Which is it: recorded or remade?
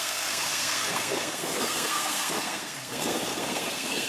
remade